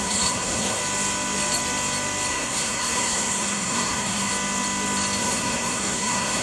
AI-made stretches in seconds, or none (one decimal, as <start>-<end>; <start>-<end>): 0.0-0.8; 2.3-4.3; 5.2-6.4